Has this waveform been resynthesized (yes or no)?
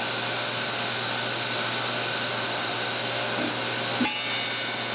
no